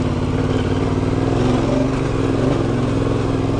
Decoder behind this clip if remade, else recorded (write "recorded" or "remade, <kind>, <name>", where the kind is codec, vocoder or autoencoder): recorded